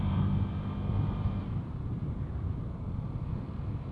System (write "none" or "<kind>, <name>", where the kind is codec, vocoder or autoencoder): none